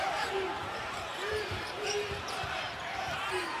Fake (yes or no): yes